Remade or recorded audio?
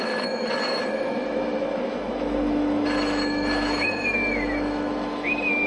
remade